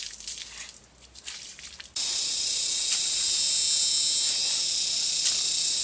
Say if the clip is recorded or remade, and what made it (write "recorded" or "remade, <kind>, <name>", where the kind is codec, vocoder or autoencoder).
recorded